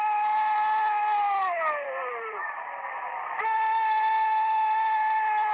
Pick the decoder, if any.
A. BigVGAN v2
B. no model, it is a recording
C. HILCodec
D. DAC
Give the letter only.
A